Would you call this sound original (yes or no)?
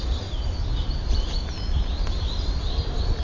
no